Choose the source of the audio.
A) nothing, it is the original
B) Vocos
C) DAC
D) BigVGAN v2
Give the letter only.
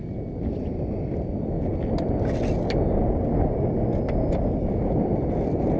A